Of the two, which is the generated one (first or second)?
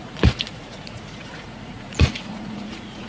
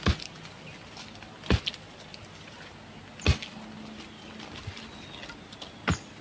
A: first